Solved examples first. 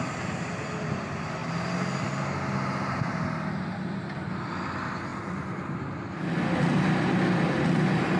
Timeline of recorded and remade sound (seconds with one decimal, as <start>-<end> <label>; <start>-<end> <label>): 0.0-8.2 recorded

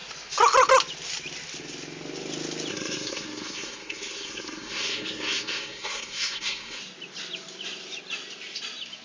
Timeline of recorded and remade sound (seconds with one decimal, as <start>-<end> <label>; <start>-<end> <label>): 0.0-2.7 recorded; 2.7-6.8 remade; 6.8-9.0 recorded

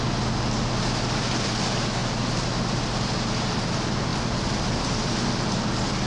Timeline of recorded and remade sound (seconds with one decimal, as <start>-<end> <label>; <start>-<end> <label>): 0.0-6.1 recorded